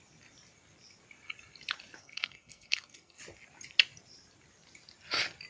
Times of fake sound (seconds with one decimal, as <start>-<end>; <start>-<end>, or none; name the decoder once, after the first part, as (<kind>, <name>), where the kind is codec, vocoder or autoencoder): 2.0-3.2 (codec, SNAC)